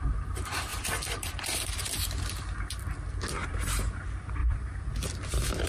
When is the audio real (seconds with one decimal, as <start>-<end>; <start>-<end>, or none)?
0.0-0.7; 2.1-3.4; 4.0-4.4; 4.9-5.7